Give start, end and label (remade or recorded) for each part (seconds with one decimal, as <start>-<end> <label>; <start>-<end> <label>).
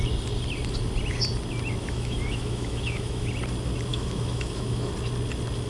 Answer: 0.0-1.8 recorded; 1.8-3.3 remade; 3.3-3.9 recorded; 3.9-4.9 remade; 4.9-5.7 recorded